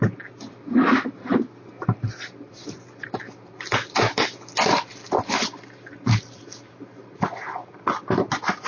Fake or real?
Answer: real